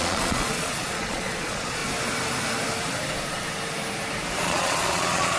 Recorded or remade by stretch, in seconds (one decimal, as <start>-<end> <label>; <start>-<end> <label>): 0.0-1.8 remade; 1.8-4.4 recorded; 4.4-5.4 remade